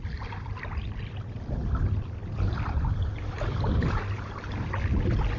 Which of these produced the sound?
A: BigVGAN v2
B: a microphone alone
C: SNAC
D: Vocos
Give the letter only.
A